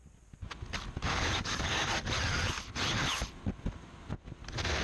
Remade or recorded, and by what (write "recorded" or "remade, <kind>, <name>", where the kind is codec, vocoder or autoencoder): recorded